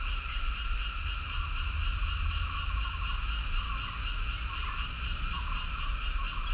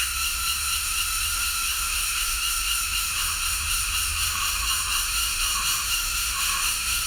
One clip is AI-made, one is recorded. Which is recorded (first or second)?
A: first